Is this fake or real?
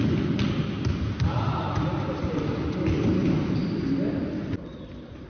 real